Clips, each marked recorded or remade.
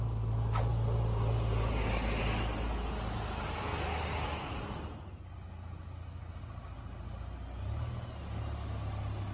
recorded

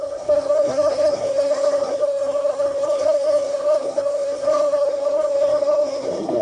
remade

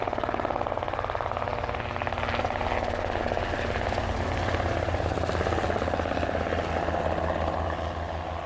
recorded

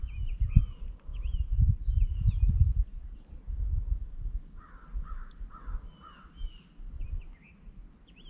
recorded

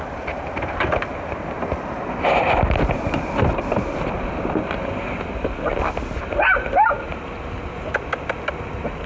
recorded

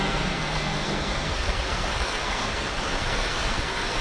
remade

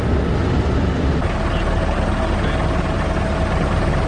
recorded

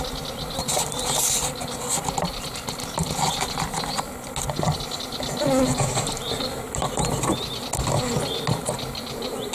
recorded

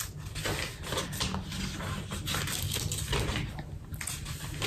recorded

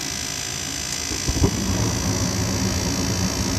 recorded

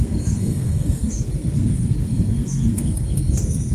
remade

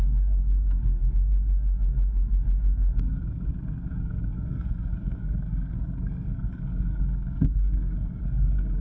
remade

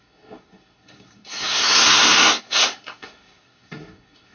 remade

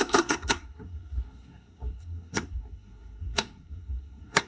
remade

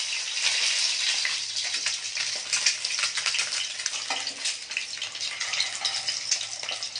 recorded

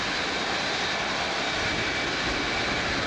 recorded